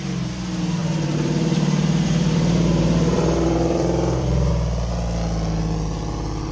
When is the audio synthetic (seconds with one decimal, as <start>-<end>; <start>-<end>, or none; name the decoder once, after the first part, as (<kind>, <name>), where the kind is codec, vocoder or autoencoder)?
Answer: 0.8-4.5 (vocoder, BigVGAN v2)